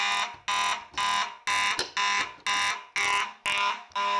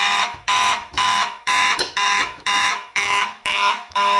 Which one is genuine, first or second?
first